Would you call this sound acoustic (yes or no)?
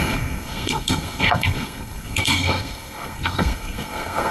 no